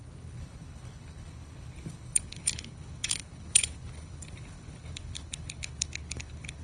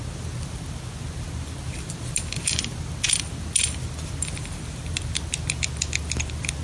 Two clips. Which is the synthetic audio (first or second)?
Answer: first